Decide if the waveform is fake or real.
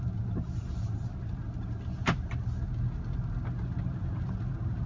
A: real